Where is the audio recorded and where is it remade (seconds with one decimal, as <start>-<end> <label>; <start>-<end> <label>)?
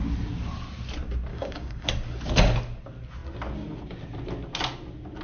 0.0-1.3 recorded; 1.3-1.9 remade; 1.9-5.2 recorded